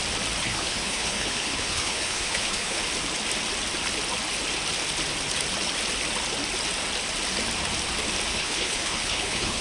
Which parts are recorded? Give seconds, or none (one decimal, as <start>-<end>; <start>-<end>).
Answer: 0.0-0.4; 2.8-8.3